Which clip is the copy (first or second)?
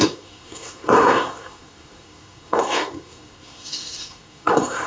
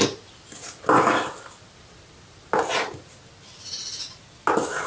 first